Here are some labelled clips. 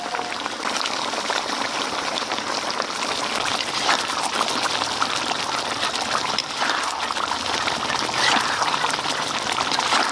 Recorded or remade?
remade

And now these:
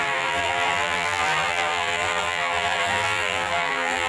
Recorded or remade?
remade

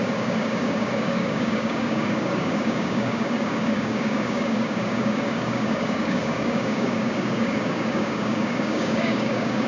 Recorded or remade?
remade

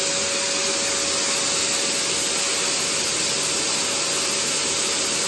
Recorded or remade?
recorded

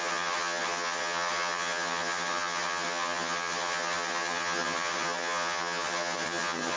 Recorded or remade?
remade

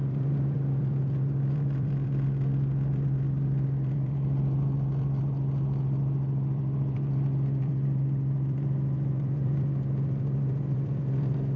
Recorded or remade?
remade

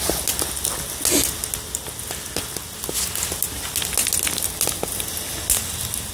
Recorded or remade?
recorded